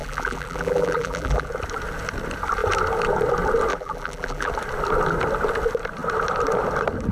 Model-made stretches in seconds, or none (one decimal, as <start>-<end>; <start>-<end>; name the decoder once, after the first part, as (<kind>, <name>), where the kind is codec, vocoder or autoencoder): 0.0-1.5 (vocoder, BigVGAN v2); 3.7-4.5